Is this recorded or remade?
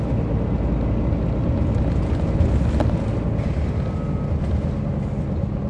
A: recorded